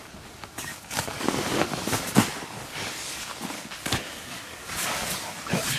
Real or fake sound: fake